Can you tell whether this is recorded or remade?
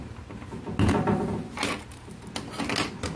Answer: recorded